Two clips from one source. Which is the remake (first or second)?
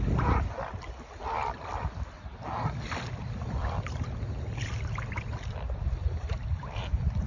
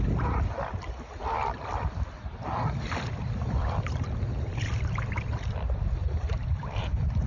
second